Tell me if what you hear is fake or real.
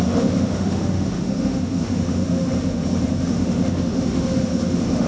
fake